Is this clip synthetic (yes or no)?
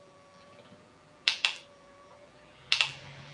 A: yes